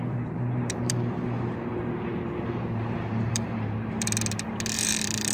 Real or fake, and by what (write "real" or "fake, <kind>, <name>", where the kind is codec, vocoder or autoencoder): fake, vocoder, BigVGAN v2